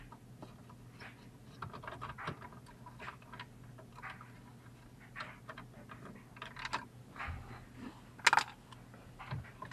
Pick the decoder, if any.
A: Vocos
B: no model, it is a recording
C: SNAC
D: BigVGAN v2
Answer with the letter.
B